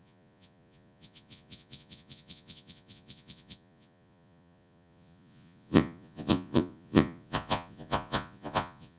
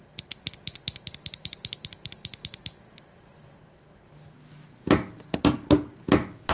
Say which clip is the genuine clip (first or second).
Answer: second